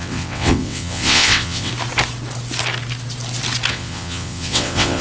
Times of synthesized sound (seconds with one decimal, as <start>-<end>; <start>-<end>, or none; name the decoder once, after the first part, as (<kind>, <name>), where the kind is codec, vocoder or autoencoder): 0.0-1.7 (vocoder, WaveNeXt); 3.7-5.0